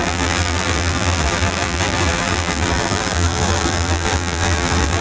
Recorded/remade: remade